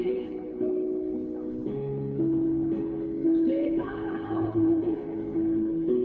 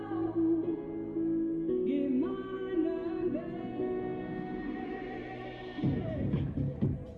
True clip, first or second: second